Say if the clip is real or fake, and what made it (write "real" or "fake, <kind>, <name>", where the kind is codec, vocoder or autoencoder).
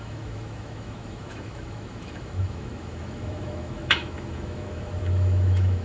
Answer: fake, autoencoder, DAC-VAE